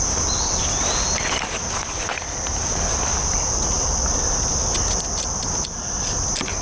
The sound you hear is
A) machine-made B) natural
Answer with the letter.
B